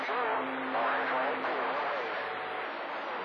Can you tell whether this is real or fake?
real